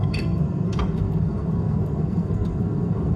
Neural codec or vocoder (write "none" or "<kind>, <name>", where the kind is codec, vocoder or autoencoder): codec, SNAC